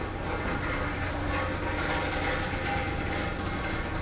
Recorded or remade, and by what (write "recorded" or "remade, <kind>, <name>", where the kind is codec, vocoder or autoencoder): recorded